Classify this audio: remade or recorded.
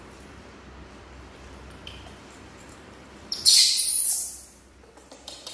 remade